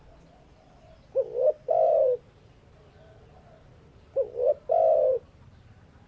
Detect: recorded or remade remade